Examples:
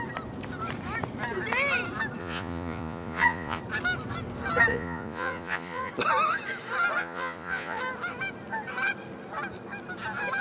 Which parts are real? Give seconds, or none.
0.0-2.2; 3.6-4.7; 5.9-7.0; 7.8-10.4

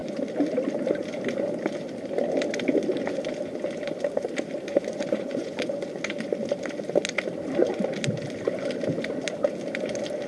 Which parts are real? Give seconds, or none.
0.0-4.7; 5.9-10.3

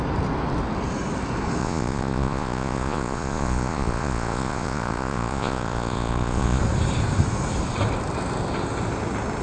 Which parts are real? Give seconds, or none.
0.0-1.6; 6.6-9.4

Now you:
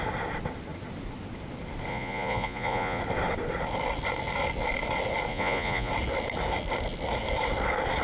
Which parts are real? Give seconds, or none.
0.0-1.9; 3.0-5.3; 5.9-8.0

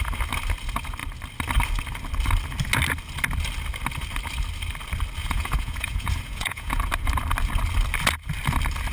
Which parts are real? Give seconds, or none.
0.0-5.2; 6.8-8.9